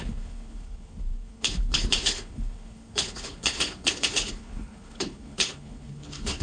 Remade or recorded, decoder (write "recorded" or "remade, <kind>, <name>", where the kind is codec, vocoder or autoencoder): remade, codec, HILCodec